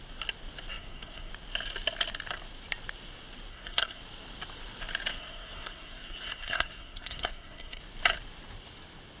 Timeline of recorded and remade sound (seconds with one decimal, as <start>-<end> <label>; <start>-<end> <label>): 0.0-0.7 recorded; 0.7-1.3 remade; 1.3-3.5 recorded; 3.5-4.0 remade; 4.0-5.1 recorded; 5.1-7.8 remade; 7.8-9.2 recorded